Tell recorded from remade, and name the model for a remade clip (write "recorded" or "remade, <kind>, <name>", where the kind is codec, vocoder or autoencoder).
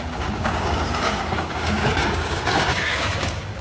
remade, codec, DAC